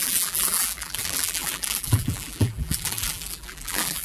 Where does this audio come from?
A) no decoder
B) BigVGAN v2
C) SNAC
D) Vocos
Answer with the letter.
B